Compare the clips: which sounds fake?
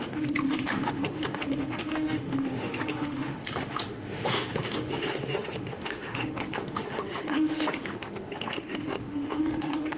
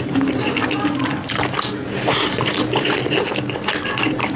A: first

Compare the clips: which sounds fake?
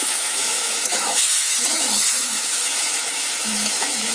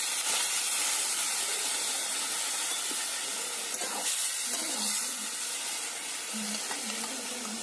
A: first